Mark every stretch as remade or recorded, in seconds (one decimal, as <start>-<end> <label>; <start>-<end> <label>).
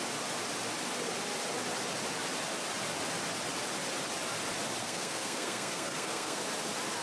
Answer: 0.0-4.8 recorded; 4.8-6.4 remade; 6.4-7.0 recorded